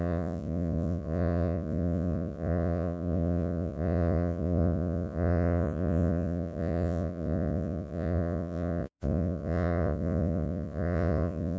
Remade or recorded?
remade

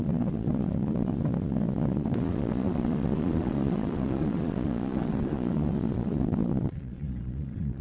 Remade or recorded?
remade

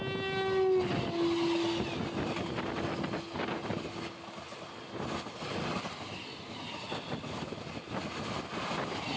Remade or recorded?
recorded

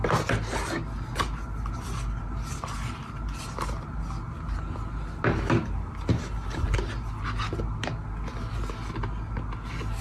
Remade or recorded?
recorded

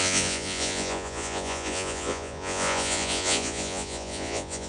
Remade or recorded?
remade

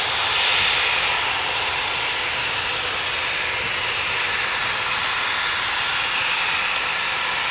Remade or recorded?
recorded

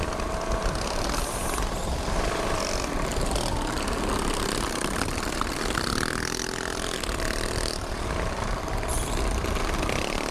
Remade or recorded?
recorded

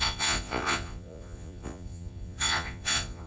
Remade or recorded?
remade